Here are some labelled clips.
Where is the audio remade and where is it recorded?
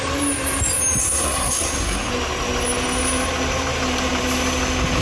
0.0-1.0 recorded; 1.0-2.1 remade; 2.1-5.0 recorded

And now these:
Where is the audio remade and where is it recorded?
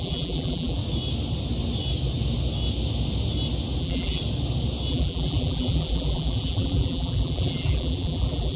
0.0-0.8 remade; 0.8-3.8 recorded; 3.8-4.2 remade; 4.2-4.9 recorded; 4.9-8.6 remade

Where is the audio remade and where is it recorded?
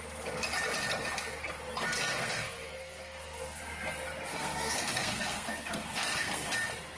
0.0-2.1 recorded; 2.1-3.6 remade; 3.6-4.3 recorded; 4.3-6.5 remade; 6.5-7.0 recorded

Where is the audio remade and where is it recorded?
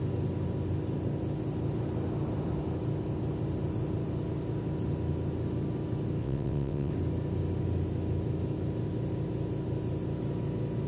0.0-6.2 recorded; 6.2-6.9 remade; 6.9-10.9 recorded